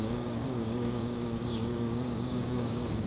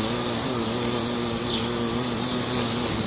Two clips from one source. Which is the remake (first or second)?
first